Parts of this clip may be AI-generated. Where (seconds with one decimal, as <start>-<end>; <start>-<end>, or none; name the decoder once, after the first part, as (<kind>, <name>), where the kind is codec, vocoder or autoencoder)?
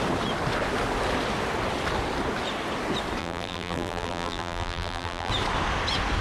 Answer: 3.2-5.3 (vocoder, BigVGAN v2)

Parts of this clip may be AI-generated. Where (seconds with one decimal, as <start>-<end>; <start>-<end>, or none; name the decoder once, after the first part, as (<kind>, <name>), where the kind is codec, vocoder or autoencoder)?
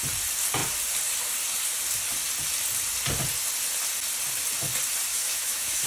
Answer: 5.1-5.9 (autoencoder, DAC-VAE)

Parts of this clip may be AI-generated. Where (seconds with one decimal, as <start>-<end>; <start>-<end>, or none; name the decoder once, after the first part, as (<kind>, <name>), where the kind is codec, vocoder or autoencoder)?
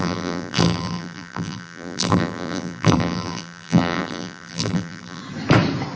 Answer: 0.0-5.2 (vocoder, BigVGAN v2)